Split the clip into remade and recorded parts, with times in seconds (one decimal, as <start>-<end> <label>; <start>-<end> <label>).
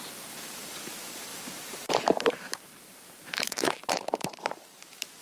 0.0-5.2 remade